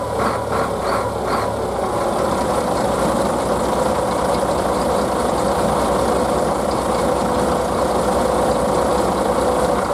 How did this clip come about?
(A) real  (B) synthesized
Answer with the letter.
A